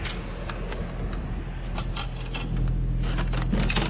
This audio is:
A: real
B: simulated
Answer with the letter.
A